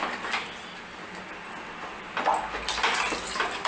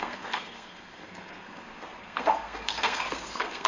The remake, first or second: second